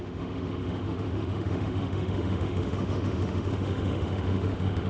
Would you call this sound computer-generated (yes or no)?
yes